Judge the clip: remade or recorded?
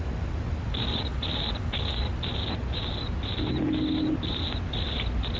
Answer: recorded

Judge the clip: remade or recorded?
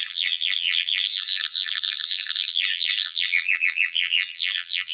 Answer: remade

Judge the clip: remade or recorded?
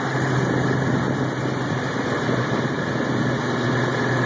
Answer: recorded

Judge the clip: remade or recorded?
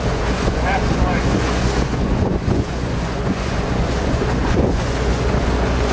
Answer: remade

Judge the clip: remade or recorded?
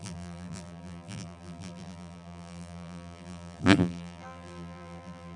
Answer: remade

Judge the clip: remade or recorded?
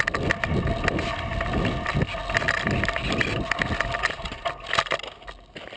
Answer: recorded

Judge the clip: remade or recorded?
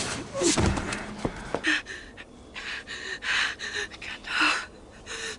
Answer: recorded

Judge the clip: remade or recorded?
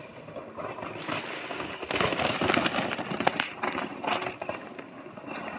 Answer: recorded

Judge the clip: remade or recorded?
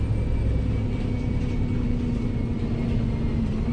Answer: recorded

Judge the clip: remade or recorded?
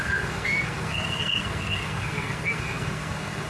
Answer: remade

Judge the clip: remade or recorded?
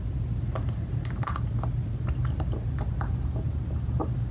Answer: recorded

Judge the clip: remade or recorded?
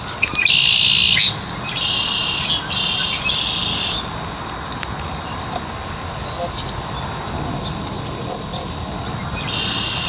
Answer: recorded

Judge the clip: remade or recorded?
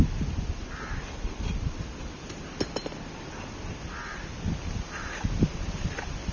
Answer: recorded